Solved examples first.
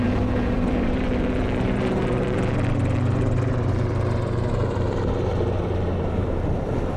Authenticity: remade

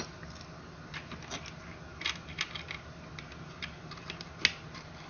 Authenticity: recorded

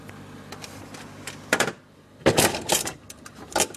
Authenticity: remade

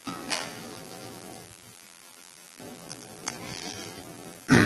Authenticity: remade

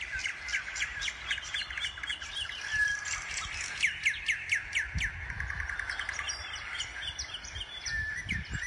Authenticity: remade